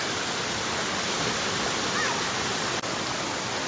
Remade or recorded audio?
recorded